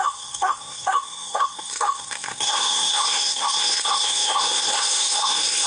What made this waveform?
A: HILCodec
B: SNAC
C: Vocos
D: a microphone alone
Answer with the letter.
B